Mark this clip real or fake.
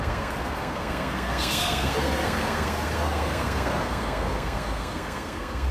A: fake